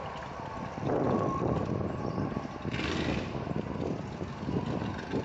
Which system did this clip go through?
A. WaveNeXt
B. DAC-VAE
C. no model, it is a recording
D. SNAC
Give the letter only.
C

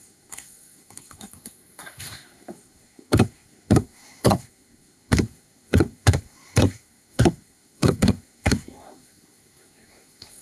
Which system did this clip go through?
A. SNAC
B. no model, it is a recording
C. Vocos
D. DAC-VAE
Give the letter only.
A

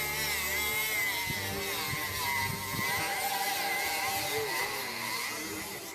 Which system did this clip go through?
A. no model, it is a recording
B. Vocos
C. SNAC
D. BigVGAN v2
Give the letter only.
A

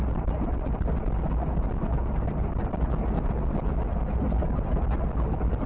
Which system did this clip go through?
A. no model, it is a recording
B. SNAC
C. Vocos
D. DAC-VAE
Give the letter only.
A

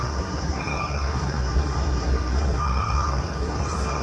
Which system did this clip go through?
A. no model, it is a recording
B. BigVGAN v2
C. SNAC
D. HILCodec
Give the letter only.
C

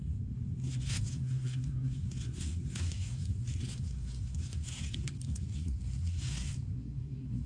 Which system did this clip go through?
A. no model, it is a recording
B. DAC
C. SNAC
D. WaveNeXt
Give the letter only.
C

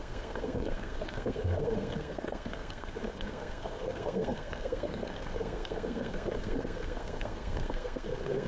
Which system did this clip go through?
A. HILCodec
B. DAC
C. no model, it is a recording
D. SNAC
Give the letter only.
D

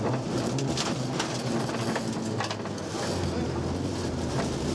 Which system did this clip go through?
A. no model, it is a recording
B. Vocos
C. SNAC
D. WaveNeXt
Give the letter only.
A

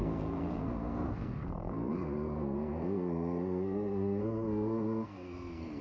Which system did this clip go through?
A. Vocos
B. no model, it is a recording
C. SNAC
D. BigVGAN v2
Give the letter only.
C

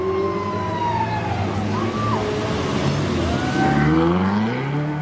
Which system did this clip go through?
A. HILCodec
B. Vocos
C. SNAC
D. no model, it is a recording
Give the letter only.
D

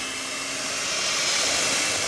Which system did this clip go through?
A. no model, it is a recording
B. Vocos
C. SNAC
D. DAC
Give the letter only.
A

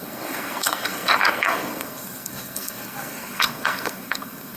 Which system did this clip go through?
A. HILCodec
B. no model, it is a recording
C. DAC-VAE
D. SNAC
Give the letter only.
D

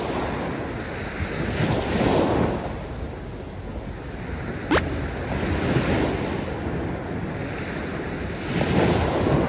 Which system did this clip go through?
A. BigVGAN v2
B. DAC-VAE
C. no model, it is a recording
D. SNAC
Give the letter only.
C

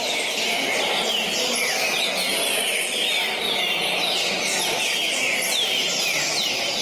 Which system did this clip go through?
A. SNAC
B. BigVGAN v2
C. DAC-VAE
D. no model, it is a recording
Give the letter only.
D